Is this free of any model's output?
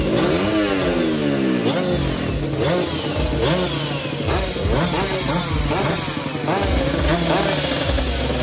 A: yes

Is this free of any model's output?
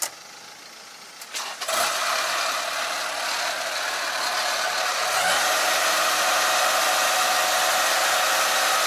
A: yes